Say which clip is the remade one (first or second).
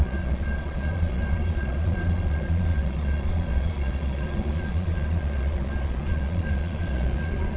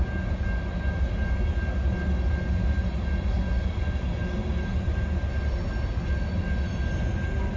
first